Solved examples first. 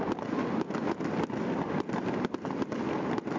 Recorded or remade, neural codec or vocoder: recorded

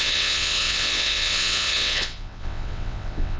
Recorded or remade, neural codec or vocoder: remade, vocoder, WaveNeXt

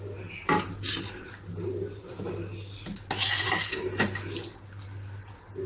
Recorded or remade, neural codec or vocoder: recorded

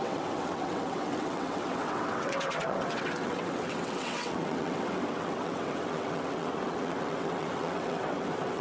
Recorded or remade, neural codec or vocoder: remade, vocoder, WaveNeXt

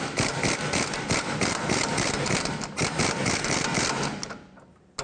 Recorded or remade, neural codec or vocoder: recorded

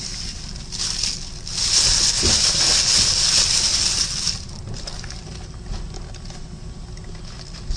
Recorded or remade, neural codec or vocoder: recorded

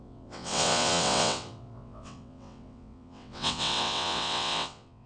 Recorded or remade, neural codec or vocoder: remade, vocoder, WaveNeXt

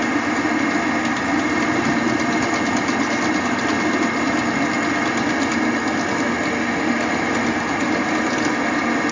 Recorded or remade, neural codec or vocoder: recorded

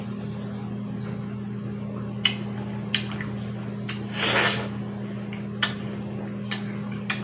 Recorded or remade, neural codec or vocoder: recorded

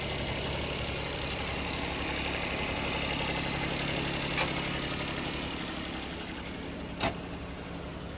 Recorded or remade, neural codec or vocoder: recorded